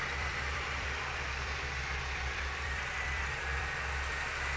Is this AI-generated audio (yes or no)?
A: yes